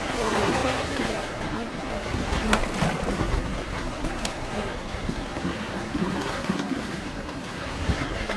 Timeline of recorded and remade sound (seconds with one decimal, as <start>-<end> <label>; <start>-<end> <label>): 0.0-2.6 remade; 2.6-3.1 recorded; 3.1-8.4 remade